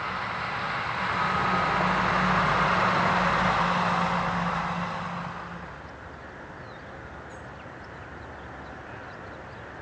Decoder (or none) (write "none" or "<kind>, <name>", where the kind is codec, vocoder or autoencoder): none